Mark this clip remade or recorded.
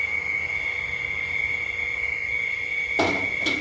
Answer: recorded